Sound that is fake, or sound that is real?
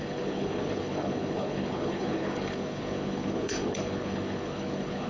fake